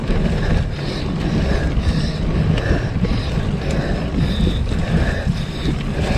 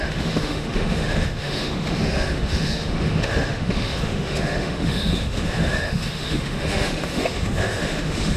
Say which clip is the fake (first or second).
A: second